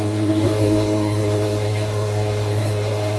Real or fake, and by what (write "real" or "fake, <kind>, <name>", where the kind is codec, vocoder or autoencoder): fake, codec, SNAC